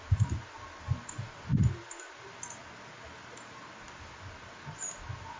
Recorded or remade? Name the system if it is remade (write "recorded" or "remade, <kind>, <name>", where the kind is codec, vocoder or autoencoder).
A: recorded